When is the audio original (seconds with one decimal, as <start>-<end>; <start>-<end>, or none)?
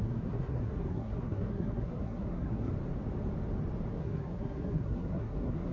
2.7-3.9